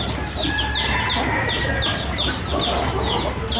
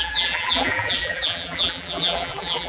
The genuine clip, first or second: first